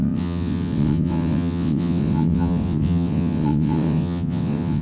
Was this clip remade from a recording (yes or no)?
yes